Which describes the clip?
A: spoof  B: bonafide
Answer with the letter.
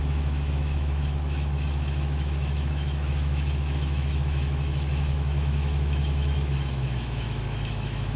A